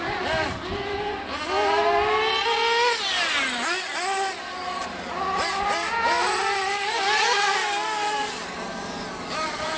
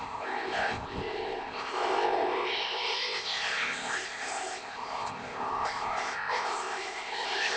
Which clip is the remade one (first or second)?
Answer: second